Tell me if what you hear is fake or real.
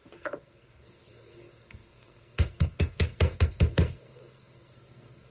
fake